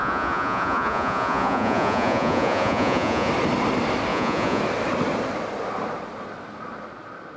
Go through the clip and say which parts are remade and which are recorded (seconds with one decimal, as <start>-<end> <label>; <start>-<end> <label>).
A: 0.0-3.3 remade; 3.3-4.1 recorded; 4.1-4.6 remade; 4.6-7.4 recorded